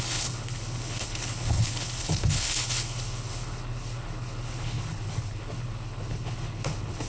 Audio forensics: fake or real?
fake